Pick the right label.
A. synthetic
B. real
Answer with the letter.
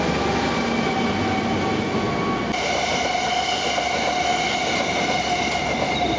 B